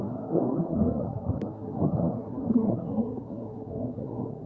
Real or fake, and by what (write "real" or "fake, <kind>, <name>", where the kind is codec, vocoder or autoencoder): fake, codec, SNAC